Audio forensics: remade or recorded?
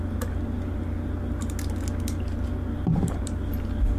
recorded